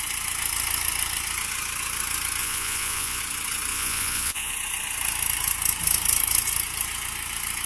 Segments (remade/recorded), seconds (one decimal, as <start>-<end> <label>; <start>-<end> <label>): 0.0-2.4 recorded; 2.4-3.2 remade; 3.2-3.7 recorded; 3.7-4.5 remade; 4.5-7.7 recorded